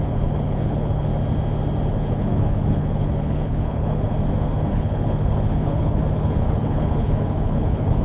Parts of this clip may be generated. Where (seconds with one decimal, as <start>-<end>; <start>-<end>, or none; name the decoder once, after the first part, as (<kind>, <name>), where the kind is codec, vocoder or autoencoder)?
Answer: 0.0-1.1 (codec, HILCodec); 1.9-4.1; 4.7-8.0